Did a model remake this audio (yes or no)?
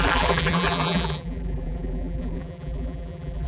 yes